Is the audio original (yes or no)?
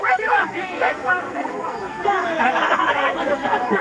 no